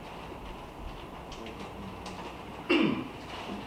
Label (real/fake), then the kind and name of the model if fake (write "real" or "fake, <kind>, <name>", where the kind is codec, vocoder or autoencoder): real